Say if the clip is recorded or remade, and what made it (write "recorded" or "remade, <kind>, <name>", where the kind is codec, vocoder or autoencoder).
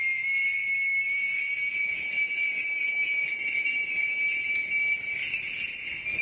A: recorded